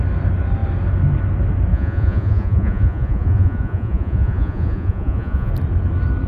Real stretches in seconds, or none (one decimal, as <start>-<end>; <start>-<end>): 0.0-1.7; 5.5-6.3